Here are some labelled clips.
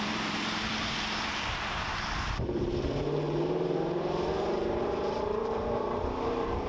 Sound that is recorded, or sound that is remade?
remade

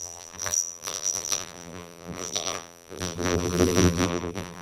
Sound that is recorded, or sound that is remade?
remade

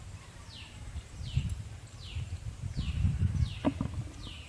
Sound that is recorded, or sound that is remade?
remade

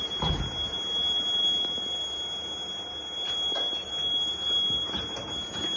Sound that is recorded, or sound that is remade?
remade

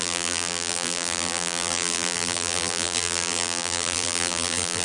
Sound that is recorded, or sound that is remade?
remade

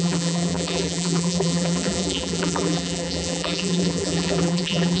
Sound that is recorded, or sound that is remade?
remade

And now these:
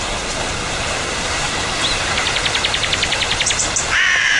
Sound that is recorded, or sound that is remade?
remade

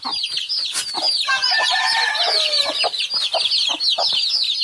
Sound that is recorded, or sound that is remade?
recorded